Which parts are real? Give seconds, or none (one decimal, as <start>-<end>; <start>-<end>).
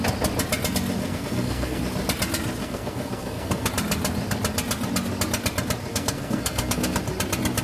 0.0-1.0; 1.8-2.6; 3.7-5.9; 7.0-7.6